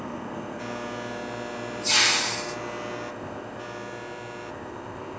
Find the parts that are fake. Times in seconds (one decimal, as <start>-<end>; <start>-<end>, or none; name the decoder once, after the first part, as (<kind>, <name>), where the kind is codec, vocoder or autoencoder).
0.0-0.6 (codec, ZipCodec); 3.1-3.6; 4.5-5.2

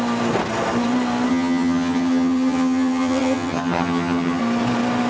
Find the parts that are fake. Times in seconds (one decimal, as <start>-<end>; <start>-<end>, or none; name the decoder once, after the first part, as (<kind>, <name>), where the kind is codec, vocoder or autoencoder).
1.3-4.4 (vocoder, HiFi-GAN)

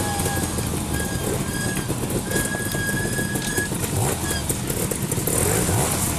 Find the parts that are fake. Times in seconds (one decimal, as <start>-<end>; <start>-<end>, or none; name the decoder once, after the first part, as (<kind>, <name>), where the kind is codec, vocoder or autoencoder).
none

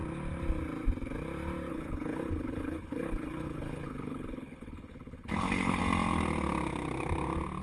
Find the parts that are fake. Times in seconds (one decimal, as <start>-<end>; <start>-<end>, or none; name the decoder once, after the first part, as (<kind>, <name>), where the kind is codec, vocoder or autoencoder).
1.7-5.8 (codec, HILCodec)

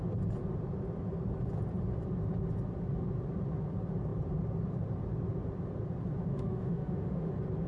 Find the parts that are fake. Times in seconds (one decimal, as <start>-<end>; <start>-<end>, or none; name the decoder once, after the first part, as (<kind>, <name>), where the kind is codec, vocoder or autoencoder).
6.2-7.3 (autoencoder, DAC-VAE)

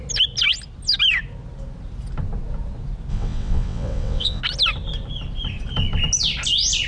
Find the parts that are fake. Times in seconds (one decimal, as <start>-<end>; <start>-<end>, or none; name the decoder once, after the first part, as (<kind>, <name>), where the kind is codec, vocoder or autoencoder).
3.1-4.4 (vocoder, WaveNeXt)

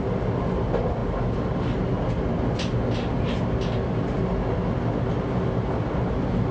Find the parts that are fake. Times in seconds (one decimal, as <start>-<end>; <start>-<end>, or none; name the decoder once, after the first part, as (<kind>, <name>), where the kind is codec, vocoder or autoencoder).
none